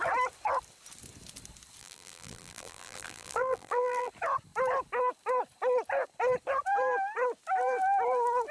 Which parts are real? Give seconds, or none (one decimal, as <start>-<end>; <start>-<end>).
0.0-1.8; 4.1-8.5